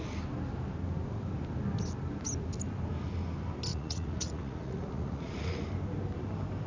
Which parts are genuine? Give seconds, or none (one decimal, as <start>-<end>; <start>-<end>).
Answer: 0.0-3.7; 5.6-6.7